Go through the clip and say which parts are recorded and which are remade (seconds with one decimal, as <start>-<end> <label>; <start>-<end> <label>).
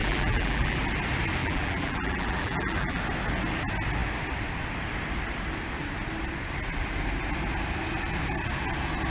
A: 0.0-0.8 remade; 0.8-1.4 recorded; 1.4-3.0 remade; 3.0-9.1 recorded